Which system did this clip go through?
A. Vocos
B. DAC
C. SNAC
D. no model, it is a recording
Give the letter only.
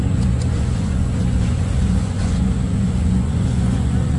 A